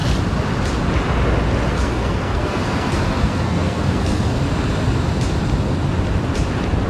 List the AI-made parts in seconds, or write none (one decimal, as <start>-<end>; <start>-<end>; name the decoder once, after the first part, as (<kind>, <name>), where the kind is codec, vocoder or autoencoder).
1.7-4.4 (codec, SNAC)